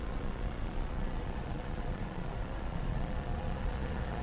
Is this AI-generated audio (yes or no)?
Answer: yes